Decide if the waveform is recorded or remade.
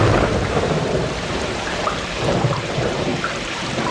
remade